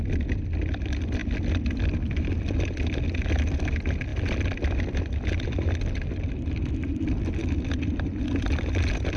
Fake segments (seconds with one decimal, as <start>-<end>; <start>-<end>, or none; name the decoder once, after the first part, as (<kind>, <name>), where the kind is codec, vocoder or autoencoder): none

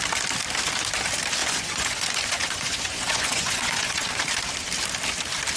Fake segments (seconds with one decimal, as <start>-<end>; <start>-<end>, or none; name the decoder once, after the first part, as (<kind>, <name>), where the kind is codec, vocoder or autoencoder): 1.4-4.2 (vocoder, Vocos)